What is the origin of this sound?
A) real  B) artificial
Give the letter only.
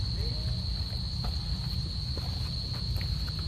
A